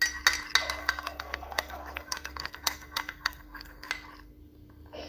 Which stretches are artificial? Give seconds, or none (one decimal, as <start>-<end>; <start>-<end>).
0.8-3.9